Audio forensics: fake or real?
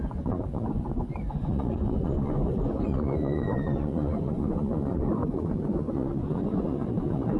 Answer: fake